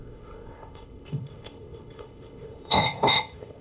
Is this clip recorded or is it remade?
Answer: remade